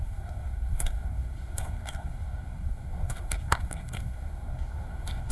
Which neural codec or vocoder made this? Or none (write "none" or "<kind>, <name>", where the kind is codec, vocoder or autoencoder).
codec, SNAC